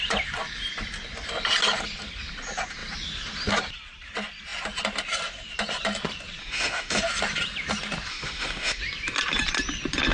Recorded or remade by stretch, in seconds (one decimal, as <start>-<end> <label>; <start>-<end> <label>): 0.0-6.4 recorded; 6.4-7.0 remade; 7.0-8.1 recorded; 8.1-8.8 remade; 8.8-10.1 recorded